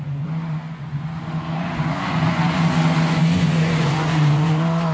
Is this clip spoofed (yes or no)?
yes